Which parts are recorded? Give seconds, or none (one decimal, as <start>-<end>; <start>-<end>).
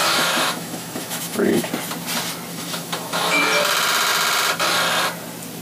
1.7-2.5; 3.4-5.6